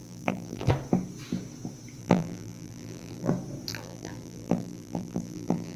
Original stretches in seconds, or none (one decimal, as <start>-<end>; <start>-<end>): 0.7-2.0; 3.3-3.7